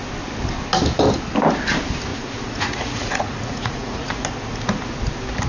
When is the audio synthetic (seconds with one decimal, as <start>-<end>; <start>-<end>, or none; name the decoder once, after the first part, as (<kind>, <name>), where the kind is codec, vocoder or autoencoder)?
2.1-4.2 (vocoder, Vocos)